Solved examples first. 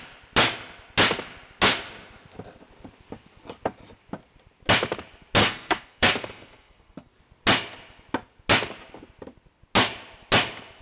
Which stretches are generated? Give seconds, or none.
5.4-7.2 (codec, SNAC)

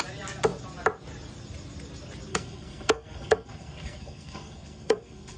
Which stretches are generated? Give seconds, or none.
2.3-5.4 (codec, SNAC)

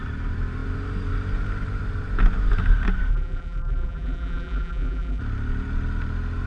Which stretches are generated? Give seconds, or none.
3.1-5.2 (vocoder, BigVGAN v2)

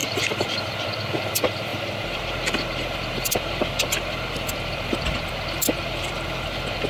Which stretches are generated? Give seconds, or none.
0.0-6.9 (vocoder, BigVGAN v2)

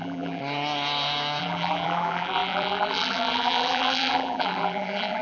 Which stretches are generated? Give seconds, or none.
0.0-0.4 (vocoder, BigVGAN v2); 1.4-5.2

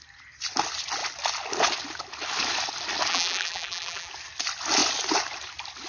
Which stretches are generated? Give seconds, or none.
3.1-4.1 (vocoder, BigVGAN v2)

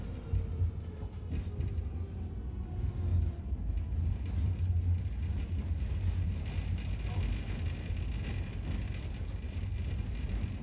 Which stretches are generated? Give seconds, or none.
none